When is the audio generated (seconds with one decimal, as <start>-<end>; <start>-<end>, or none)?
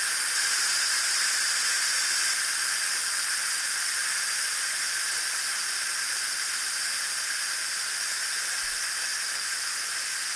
5.9-7.7